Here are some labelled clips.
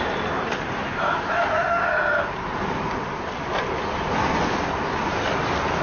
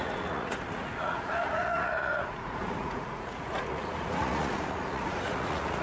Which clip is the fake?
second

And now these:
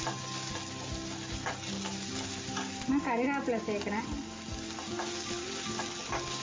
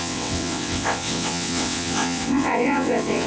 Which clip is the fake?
second